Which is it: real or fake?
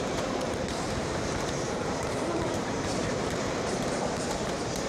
fake